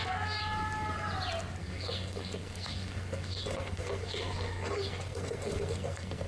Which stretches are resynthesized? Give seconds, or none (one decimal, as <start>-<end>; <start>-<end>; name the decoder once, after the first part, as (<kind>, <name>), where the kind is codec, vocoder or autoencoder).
0.0-0.4 (codec, SNAC); 1.6-6.3